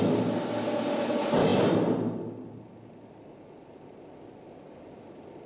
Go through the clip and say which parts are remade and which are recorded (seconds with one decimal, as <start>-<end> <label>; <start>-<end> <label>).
0.0-5.5 recorded